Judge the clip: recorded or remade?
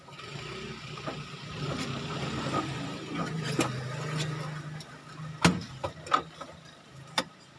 recorded